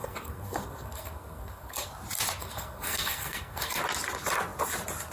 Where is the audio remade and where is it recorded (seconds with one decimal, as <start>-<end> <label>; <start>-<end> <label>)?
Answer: 0.0-1.9 remade; 1.9-2.4 recorded; 2.4-3.8 remade; 3.8-5.1 recorded